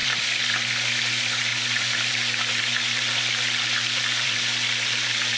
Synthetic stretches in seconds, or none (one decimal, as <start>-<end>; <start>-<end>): 0.0-5.4